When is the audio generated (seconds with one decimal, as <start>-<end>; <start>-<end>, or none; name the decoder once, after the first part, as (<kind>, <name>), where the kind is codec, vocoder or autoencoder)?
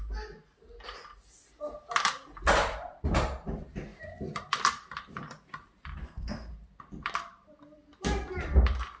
6.0-6.5 (codec, SNAC)